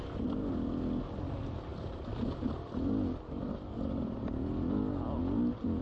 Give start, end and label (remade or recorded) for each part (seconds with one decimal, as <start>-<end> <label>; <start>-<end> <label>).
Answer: 0.0-5.8 recorded